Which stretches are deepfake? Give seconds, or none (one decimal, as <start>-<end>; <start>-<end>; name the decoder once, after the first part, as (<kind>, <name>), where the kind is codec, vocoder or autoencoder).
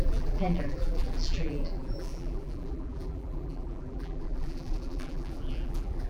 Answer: 0.0-6.1 (vocoder, BigVGAN v2)